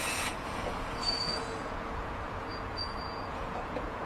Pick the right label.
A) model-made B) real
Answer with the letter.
A